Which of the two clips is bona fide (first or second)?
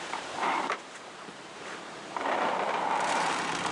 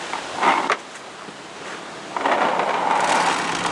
second